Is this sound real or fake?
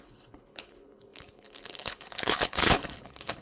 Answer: fake